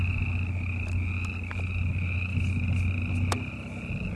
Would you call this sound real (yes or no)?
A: yes